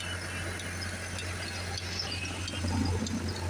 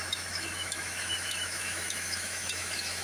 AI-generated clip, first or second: second